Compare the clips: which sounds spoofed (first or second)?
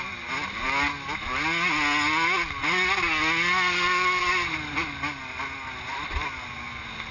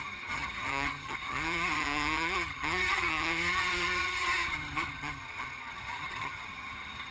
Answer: second